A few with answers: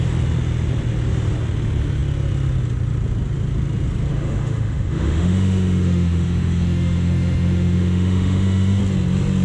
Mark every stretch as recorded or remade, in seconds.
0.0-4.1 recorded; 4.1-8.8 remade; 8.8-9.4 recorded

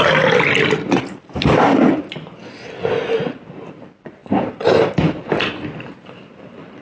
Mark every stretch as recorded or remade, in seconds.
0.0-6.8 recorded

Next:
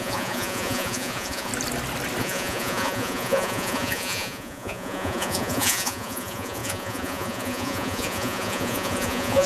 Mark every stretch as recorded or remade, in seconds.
0.0-1.5 remade; 1.5-2.2 recorded; 2.2-9.5 remade